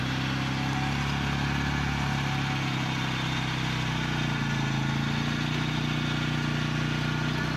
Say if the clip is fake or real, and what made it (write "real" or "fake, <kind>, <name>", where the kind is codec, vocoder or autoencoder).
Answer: real